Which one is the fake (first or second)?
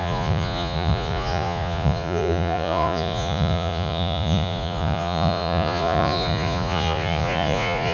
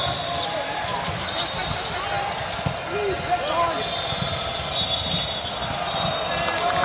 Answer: first